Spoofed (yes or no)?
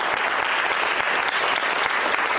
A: no